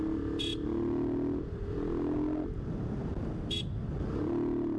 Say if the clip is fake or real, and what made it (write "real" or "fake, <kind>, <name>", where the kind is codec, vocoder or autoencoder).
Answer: real